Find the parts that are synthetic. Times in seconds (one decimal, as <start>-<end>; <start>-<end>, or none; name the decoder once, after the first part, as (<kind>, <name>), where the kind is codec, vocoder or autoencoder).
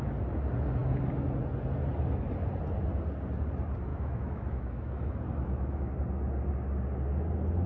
3.9-5.9 (autoencoder, DAC-VAE)